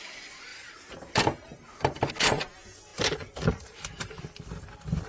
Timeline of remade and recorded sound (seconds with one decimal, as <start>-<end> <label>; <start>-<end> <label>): 0.0-0.5 recorded; 0.5-2.1 remade; 2.1-2.9 recorded; 2.9-4.2 remade; 4.2-5.1 recorded